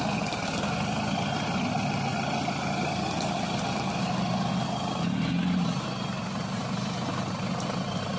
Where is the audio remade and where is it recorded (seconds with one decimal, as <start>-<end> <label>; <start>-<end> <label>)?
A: 0.0-8.2 recorded